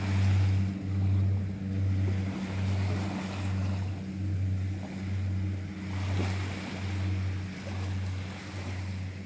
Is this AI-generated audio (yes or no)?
no